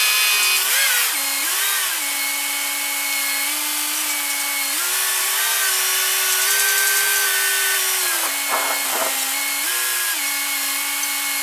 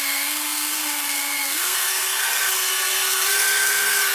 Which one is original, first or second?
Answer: first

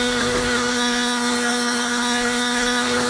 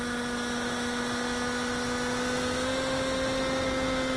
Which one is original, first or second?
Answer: second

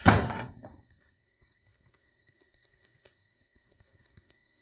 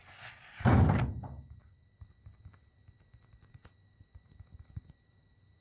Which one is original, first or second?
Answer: second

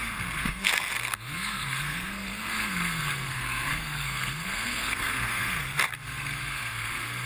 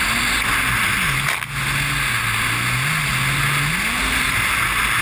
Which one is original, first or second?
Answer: second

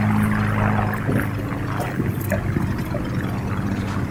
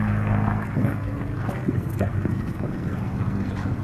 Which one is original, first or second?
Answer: first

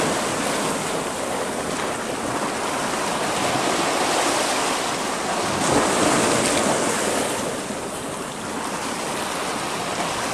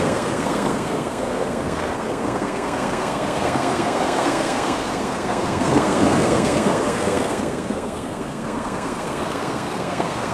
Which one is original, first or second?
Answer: first